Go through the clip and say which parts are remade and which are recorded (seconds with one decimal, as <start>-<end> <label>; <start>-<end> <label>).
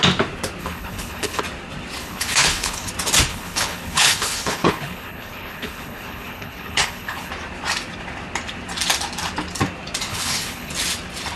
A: 0.0-0.6 recorded; 0.6-1.4 remade; 1.4-2.0 recorded; 2.0-2.9 remade; 2.9-3.3 recorded; 3.3-7.3 remade; 7.3-10.1 recorded; 10.1-10.7 remade; 10.7-11.4 recorded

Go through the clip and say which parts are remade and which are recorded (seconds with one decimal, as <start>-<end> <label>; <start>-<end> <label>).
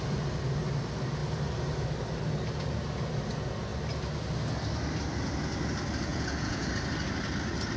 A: 0.0-6.1 recorded; 6.1-6.7 remade; 6.7-7.8 recorded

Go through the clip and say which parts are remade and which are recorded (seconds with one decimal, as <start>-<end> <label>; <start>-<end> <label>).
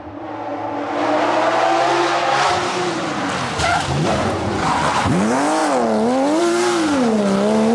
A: 0.0-4.2 recorded; 4.2-4.9 remade; 4.9-7.7 recorded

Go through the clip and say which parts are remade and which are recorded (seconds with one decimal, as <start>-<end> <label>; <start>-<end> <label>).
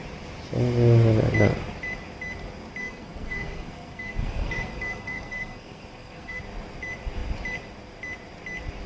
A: 0.0-2.8 recorded; 2.8-6.4 remade; 6.4-8.9 recorded